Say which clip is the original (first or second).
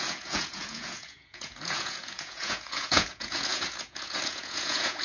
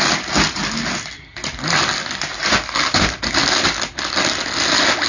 second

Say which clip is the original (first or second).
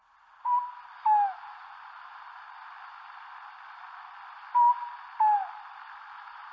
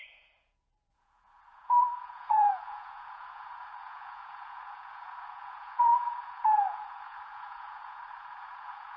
first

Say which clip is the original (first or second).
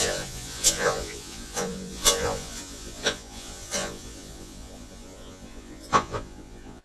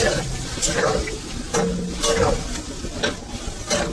second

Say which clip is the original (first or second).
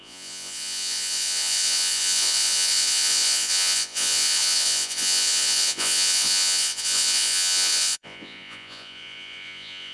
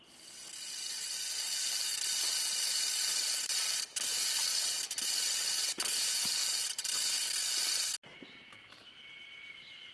second